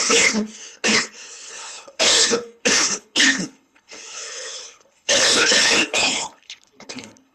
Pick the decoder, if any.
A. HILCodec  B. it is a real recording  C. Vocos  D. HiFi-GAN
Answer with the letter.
A